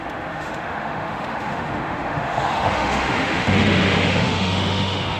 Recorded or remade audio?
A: remade